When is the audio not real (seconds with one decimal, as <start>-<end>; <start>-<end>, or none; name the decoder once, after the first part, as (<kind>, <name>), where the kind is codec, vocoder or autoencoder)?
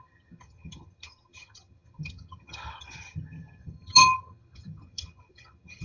0.0-5.8 (vocoder, HiFi-GAN)